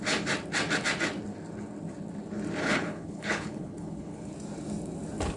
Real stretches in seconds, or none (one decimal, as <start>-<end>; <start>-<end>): 0.0-2.6; 4.3-5.4